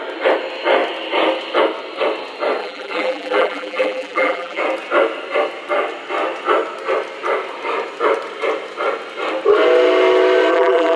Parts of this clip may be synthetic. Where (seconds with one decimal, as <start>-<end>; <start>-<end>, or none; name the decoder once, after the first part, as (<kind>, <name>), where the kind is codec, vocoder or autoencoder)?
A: 2.6-4.6 (vocoder, BigVGAN v2); 10.5-11.0